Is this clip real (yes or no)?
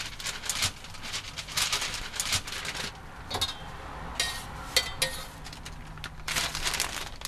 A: yes